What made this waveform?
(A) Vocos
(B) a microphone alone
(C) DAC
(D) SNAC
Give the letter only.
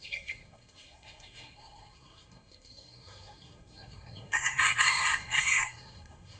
D